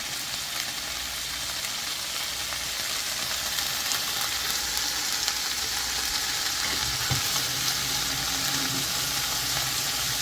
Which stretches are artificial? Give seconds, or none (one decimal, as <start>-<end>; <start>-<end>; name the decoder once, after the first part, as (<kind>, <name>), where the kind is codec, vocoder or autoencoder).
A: none